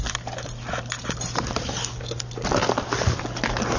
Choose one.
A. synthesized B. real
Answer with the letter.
B